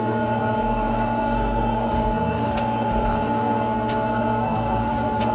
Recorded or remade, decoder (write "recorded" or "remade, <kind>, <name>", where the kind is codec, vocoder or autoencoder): remade, codec, SNAC